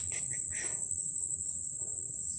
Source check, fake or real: fake